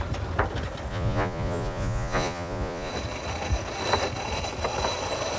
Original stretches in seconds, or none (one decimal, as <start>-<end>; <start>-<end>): 0.0-0.9; 2.9-5.4